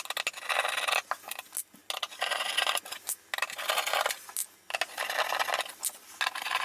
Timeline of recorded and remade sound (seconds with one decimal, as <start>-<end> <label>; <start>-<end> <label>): 0.0-6.6 recorded